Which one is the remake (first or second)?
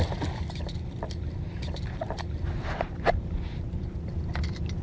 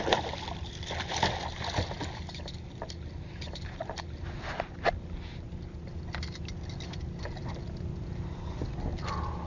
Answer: first